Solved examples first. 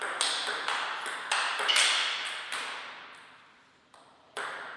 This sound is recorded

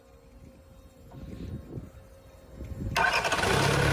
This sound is recorded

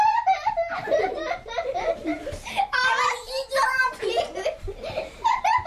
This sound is remade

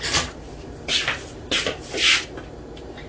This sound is recorded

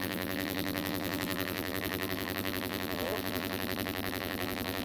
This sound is remade